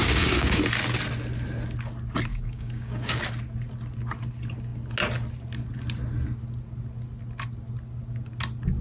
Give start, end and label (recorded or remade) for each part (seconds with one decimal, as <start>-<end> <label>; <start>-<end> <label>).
0.0-0.6 remade; 0.6-2.3 recorded; 2.3-3.2 remade; 3.2-8.8 recorded